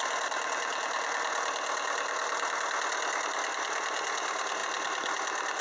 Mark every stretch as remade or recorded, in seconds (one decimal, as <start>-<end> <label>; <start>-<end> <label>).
0.0-4.6 recorded; 4.6-5.6 remade